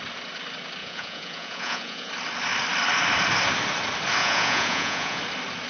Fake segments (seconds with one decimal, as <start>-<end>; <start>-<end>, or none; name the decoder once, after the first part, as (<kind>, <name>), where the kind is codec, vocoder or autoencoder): 0.8-2.1 (vocoder, Vocos); 4.2-5.2